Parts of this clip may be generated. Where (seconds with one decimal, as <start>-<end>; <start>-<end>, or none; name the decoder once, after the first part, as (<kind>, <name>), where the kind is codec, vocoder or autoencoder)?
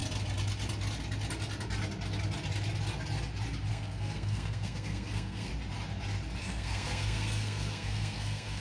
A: 3.7-5.5 (codec, SNAC); 6.4-8.6